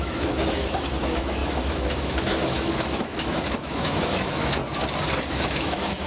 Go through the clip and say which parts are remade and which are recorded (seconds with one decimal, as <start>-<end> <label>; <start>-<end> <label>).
0.0-4.6 remade; 4.6-5.3 recorded; 5.3-6.1 remade

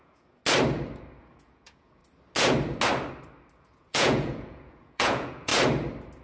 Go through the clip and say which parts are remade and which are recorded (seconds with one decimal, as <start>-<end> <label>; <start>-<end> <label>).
0.0-0.4 remade; 0.4-1.2 recorded; 1.2-2.0 remade; 2.0-3.6 recorded; 3.6-5.5 remade; 5.5-6.2 recorded

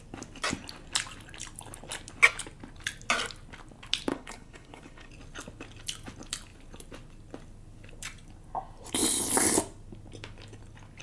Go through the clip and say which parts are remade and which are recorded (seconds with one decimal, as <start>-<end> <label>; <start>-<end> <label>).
0.0-4.1 recorded; 4.1-5.1 remade; 5.1-11.0 recorded

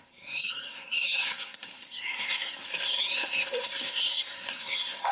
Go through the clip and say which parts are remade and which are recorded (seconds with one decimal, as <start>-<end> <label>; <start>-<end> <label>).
0.0-5.1 remade